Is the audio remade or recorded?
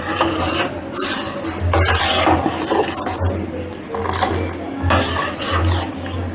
recorded